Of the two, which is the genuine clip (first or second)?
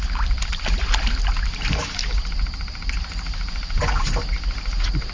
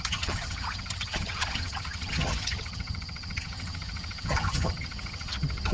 first